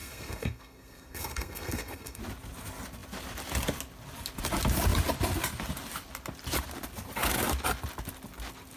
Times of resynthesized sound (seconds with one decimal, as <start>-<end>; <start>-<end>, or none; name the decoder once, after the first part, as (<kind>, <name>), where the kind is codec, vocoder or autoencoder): 0.0-2.2 (codec, SNAC)

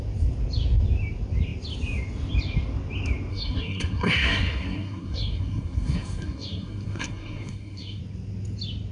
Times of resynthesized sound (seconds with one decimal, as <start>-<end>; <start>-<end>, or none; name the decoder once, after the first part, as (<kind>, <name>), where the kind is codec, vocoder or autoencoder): 3.3-8.0 (codec, SNAC)